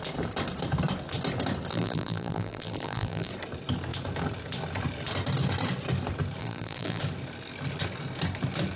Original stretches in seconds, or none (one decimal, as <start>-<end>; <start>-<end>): 0.0-1.7; 3.3-6.4; 7.0-8.8